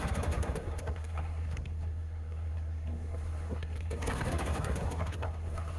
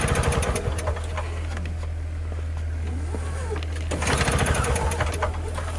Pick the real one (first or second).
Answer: second